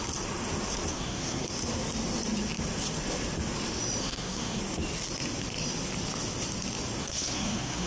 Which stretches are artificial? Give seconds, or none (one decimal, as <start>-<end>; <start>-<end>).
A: 0.9-1.5; 4.0-4.6; 7.0-7.9